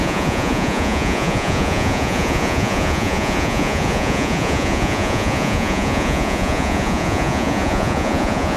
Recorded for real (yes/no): no